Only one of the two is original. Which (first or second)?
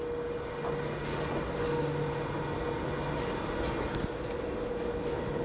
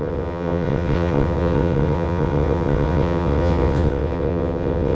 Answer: first